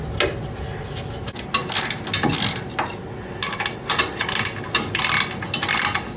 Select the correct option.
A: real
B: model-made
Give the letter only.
A